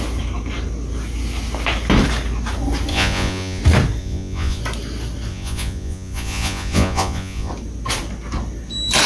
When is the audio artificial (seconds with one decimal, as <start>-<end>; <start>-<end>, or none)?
2.9-3.6; 4.0-4.6; 5.3-7.5